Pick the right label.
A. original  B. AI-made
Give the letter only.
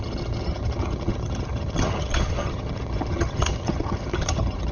B